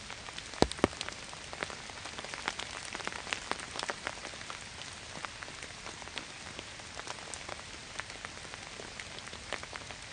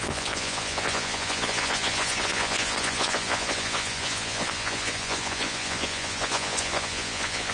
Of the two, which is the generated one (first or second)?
second